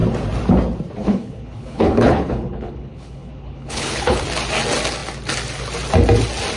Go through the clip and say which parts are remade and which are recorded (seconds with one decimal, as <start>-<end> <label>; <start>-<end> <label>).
0.0-1.0 recorded; 1.0-4.2 remade; 4.2-6.6 recorded